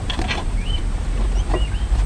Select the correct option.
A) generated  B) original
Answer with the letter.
A